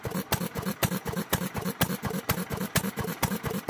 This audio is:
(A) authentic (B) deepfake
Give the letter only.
A